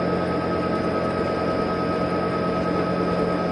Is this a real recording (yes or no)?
yes